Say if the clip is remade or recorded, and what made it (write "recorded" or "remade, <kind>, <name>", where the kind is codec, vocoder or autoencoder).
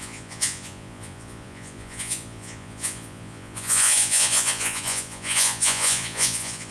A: remade, vocoder, Vocos